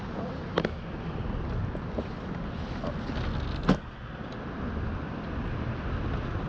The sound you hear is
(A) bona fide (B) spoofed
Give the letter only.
A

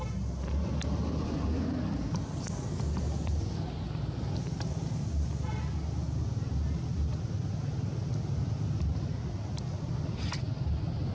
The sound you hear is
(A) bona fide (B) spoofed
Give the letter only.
A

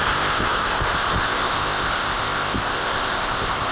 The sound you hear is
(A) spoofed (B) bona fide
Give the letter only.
A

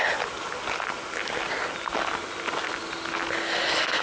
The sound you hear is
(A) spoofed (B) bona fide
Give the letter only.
B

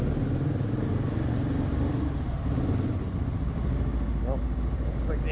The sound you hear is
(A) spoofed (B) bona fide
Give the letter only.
B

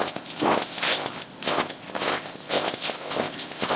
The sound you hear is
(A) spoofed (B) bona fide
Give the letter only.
A